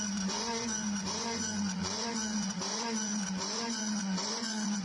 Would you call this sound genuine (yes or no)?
no